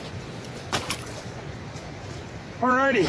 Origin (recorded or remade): remade